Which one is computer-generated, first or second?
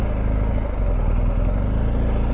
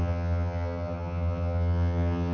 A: second